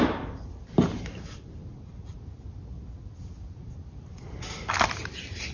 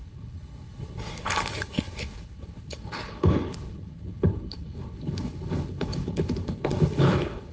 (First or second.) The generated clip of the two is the second